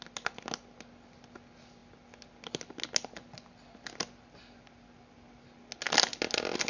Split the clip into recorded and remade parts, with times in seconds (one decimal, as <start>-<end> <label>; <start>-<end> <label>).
0.0-6.7 recorded